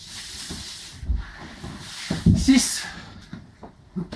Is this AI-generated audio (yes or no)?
yes